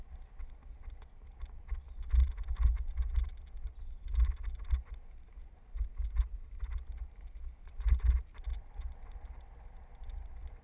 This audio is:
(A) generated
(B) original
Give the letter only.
B